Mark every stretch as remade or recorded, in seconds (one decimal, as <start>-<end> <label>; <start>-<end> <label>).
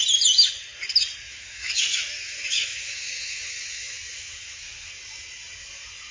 0.0-1.3 recorded; 1.3-4.9 remade; 4.9-6.1 recorded